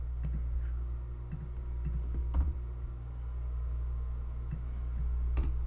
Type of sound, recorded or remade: recorded